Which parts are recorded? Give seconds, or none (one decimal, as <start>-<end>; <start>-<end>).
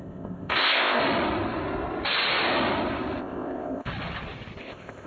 1.0-3.2; 3.9-4.6